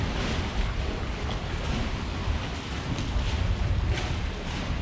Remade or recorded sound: recorded